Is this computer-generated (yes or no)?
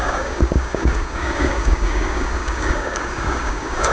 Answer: yes